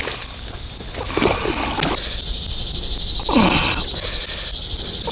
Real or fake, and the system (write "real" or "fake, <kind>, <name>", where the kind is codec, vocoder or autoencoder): real